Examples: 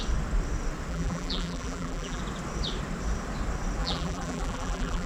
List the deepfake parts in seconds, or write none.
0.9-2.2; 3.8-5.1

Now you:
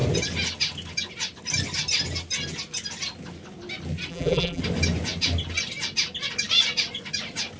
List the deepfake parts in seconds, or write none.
4.1-4.6

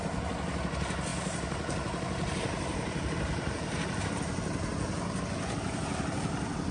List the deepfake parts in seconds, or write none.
1.1-4.1

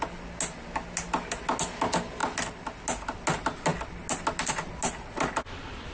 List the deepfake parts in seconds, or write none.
none

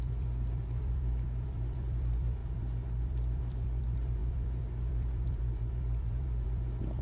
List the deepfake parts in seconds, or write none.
0.0-7.0

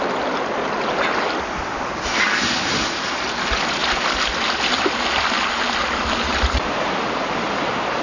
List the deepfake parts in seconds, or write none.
none

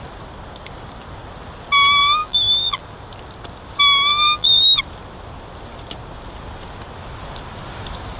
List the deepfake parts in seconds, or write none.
2.0-2.8; 4.1-4.8

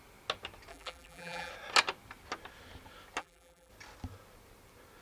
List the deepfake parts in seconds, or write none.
0.7-1.5; 3.2-3.7